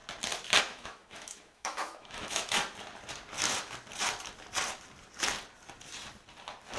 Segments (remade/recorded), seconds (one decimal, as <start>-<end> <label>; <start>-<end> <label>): 0.0-0.6 recorded; 0.6-2.6 remade; 2.6-6.8 recorded